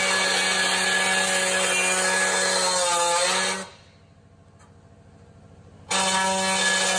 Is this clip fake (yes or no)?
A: no